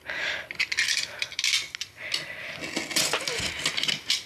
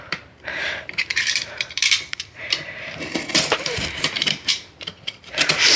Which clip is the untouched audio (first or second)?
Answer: first